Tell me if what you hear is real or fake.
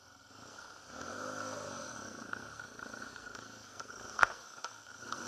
fake